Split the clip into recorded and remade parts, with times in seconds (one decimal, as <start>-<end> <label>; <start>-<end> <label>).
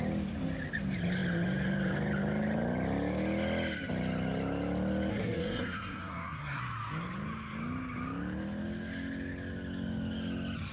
0.0-5.1 recorded; 5.1-6.6 remade; 6.6-10.7 recorded